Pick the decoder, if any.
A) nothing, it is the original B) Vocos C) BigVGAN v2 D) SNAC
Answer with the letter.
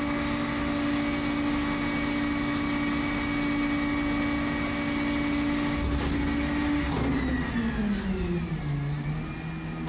A